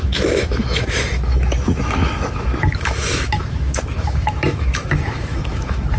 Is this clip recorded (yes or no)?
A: no